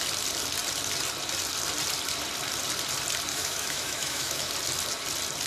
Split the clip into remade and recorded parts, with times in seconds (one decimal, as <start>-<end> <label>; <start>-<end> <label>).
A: 0.0-3.3 recorded; 3.3-4.5 remade; 4.5-5.5 recorded